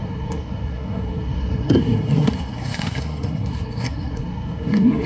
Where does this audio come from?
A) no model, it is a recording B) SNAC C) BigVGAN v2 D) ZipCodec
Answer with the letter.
B